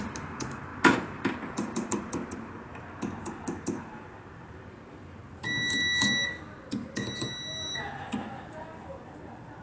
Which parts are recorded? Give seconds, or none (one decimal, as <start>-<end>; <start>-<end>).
5.2-8.0